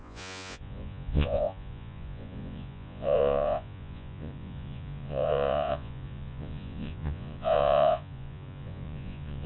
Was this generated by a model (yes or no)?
yes